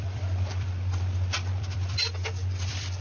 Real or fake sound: fake